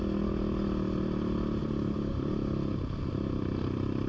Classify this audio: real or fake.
real